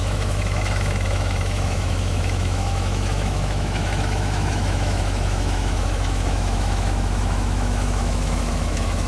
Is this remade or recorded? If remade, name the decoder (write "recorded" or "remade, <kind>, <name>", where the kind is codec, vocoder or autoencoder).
remade, autoencoder, DAC-VAE